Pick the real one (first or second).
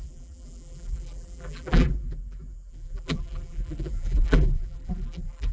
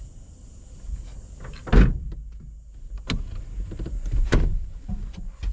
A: second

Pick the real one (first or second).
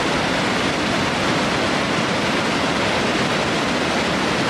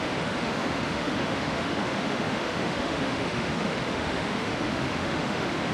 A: first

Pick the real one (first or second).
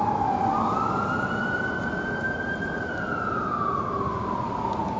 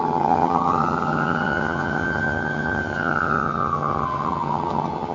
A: first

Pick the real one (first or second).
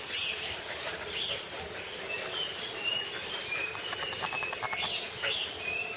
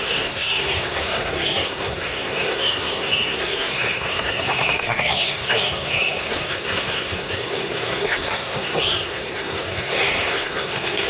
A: first